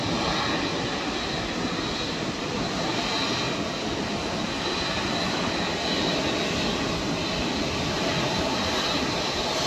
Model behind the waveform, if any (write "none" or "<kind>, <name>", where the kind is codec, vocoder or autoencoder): none